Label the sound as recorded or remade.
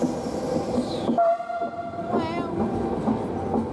recorded